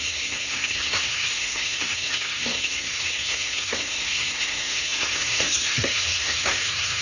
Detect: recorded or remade remade